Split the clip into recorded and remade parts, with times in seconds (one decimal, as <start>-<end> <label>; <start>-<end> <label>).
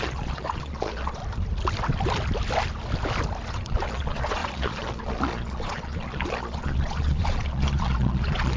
0.0-1.2 remade; 1.2-3.5 recorded; 3.5-8.6 remade